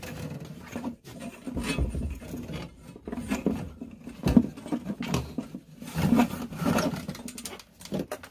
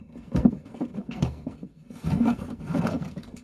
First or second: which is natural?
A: first